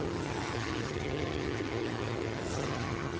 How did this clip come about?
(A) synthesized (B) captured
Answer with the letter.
A